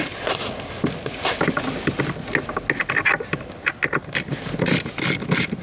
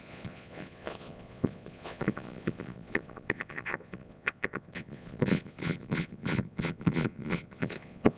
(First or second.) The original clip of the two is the first